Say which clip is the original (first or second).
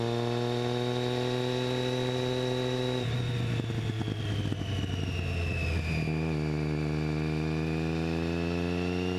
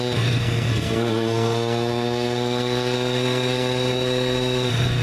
first